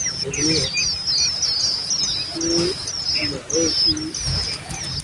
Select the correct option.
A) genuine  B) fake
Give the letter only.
A